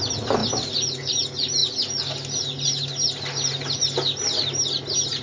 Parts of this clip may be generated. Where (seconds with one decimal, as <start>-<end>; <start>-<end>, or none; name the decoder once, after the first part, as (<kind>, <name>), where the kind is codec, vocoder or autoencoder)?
0.4-1.1 (vocoder, BigVGAN v2)